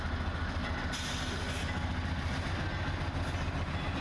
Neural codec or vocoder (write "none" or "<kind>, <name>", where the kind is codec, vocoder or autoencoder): none